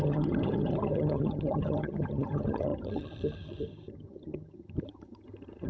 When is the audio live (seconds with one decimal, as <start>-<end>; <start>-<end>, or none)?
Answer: none